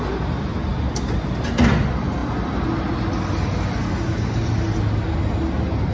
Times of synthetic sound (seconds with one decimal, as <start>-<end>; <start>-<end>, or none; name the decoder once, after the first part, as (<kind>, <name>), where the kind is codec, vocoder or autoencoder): none

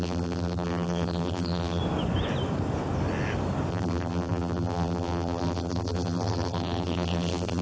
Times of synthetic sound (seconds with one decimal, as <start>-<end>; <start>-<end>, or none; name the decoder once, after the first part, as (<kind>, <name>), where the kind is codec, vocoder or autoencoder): 0.0-1.8 (vocoder, BigVGAN v2); 3.7-7.6